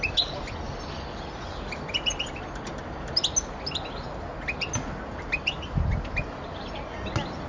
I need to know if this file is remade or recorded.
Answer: recorded